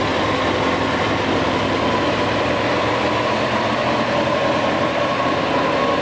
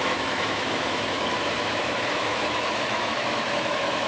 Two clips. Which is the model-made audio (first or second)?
second